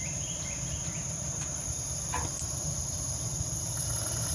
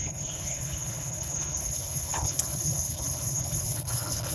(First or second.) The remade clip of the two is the second